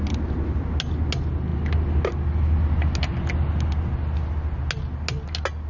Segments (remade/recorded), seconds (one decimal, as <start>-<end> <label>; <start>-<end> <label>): 0.0-5.7 recorded

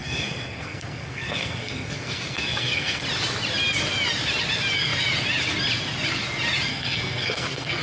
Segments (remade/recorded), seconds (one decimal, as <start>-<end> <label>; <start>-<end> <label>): 0.0-3.0 remade; 3.0-6.7 recorded; 6.7-7.8 remade

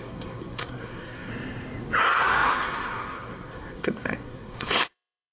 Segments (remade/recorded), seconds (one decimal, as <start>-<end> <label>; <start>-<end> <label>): 0.0-1.3 remade; 1.3-2.0 recorded; 2.0-5.3 remade

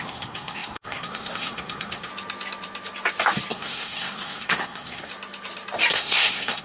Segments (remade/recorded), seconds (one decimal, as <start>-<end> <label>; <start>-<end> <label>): 0.0-2.1 remade; 2.1-3.5 recorded; 3.5-5.1 remade; 5.1-5.9 recorded; 5.9-6.6 remade

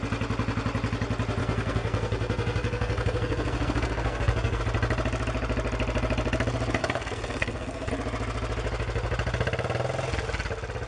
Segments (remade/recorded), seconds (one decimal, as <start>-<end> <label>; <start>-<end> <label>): 0.0-1.4 recorded; 1.4-4.6 remade; 4.6-6.8 recorded; 6.8-7.9 remade; 7.9-10.9 recorded

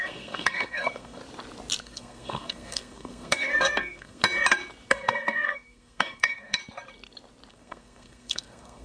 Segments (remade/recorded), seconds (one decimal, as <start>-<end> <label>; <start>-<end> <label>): 0.0-1.2 remade; 1.2-1.8 recorded; 1.8-4.2 remade; 4.2-4.9 recorded; 4.9-6.6 remade; 6.6-7.5 recorded; 7.5-8.8 remade

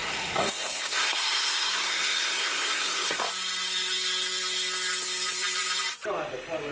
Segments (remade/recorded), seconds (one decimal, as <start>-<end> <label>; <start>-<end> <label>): 0.0-3.2 remade; 3.2-6.7 recorded